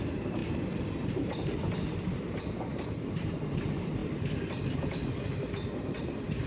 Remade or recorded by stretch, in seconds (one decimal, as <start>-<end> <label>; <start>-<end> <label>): 0.0-0.4 remade; 0.4-1.1 recorded; 1.1-4.0 remade; 4.0-5.1 recorded; 5.1-6.5 remade